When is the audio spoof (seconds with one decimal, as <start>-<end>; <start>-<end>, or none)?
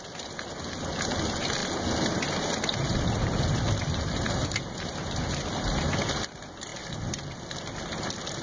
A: none